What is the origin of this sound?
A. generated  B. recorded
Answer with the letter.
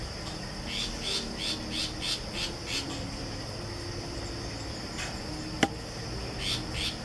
B